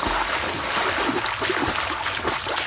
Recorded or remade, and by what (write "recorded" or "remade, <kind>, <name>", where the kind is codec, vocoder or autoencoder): recorded